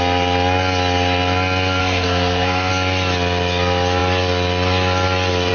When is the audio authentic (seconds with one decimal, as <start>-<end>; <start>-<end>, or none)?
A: 0.0-1.8; 2.7-5.5